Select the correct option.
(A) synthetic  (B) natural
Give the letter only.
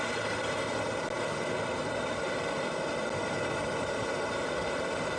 B